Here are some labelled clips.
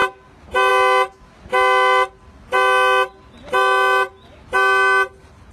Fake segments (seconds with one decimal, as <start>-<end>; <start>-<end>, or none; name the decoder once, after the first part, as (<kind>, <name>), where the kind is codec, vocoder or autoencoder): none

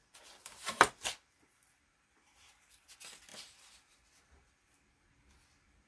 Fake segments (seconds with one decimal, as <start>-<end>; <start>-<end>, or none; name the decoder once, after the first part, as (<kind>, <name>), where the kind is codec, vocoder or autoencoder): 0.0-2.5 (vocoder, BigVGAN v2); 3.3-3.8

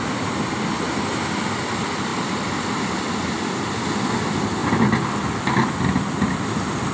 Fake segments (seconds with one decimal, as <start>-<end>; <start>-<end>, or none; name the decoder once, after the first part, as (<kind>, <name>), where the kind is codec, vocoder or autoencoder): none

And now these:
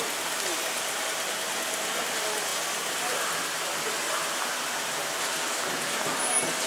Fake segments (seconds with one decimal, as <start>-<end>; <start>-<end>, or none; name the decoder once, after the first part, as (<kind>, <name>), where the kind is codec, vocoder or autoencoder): none